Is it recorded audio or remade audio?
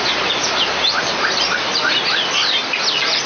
remade